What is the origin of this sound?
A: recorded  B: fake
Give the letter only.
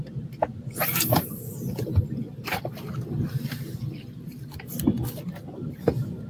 A